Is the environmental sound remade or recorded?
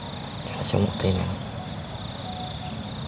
recorded